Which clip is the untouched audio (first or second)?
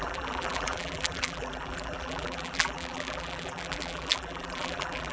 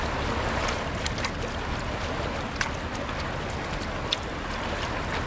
second